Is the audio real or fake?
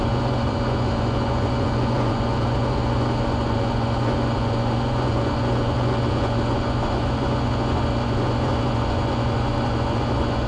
fake